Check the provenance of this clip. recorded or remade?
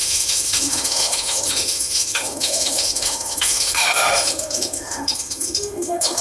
remade